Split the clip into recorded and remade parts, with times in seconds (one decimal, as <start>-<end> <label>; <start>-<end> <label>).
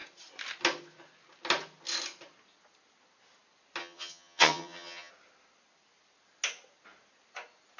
0.0-3.8 recorded; 3.8-5.1 remade; 5.1-7.8 recorded